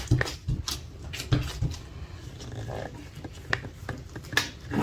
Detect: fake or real real